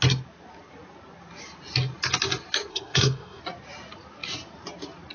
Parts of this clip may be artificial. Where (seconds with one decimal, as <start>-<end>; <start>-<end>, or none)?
2.7-3.4